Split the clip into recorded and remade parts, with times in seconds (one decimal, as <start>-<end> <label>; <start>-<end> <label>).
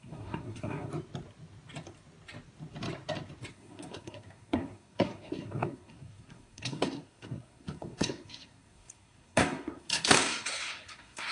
0.0-0.9 remade; 0.9-3.5 recorded; 3.5-11.3 remade